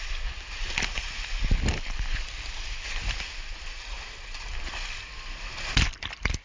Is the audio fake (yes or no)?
no